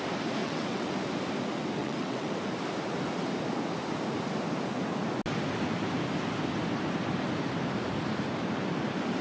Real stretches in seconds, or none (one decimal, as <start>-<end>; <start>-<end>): 0.0-0.4; 0.9-1.8; 2.3-9.2